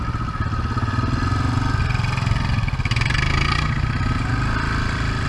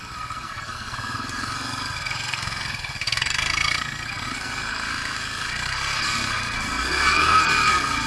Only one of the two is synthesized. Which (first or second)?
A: second